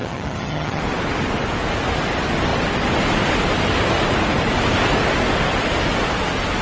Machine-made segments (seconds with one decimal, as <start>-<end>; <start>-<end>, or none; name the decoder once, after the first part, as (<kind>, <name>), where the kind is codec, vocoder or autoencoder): 0.0-0.8 (vocoder, HiFi-GAN)